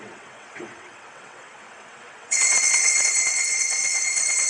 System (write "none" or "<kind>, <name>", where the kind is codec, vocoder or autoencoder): vocoder, WaveNeXt